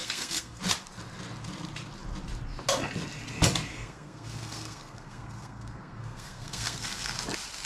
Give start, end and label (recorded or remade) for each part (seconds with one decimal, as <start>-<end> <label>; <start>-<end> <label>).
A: 0.0-0.6 remade; 0.6-3.7 recorded; 3.7-7.1 remade; 7.1-7.7 recorded